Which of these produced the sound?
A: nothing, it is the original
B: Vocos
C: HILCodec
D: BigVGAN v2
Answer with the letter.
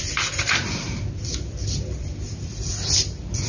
D